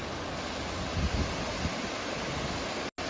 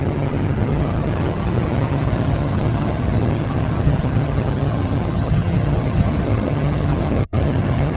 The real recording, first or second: first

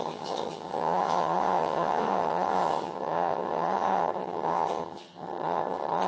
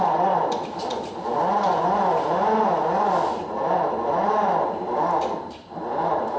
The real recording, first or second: second